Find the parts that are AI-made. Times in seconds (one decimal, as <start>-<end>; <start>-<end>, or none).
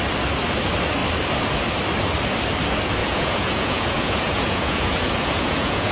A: 3.0-5.9